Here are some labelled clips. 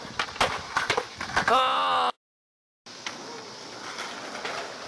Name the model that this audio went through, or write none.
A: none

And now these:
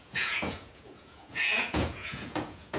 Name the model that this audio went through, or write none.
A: vocoder, Vocos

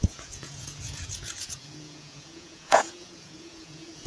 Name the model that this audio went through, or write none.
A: vocoder, Vocos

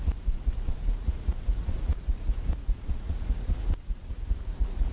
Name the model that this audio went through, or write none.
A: vocoder, Vocos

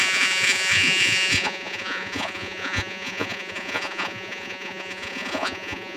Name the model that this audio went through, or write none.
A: vocoder, Vocos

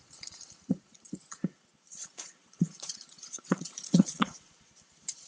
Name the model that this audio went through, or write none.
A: vocoder, Vocos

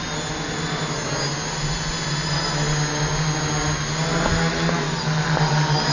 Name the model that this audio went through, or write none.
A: none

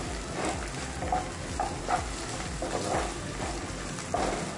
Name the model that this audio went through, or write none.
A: none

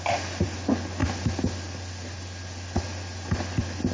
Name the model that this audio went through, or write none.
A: none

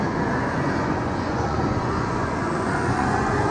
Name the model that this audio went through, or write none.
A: vocoder, Vocos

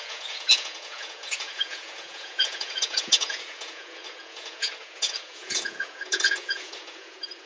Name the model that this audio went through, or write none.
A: vocoder, Vocos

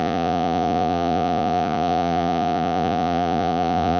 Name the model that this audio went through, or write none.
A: vocoder, Vocos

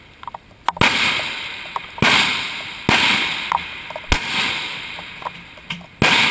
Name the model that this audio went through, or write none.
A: none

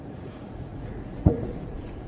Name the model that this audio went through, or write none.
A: vocoder, Vocos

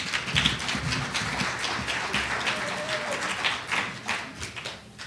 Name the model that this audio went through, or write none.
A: none